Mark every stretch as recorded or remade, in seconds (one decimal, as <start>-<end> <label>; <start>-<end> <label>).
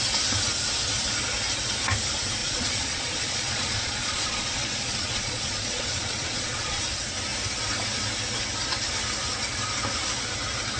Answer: 0.0-2.4 recorded; 2.4-6.8 remade; 6.8-10.8 recorded